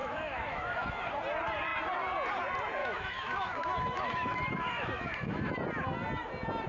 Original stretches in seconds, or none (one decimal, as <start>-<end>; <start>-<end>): 1.1-2.8; 5.5-6.7